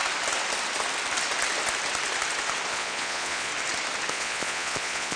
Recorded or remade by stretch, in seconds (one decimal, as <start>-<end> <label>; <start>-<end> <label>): 0.0-2.7 recorded; 2.7-3.5 remade; 3.5-4.1 recorded; 4.1-5.2 remade

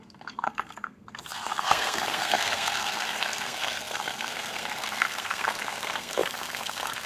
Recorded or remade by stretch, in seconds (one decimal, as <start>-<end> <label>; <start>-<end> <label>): 0.0-7.1 remade

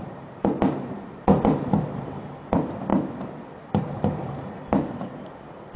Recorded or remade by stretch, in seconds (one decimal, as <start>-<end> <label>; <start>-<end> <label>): 0.0-5.8 remade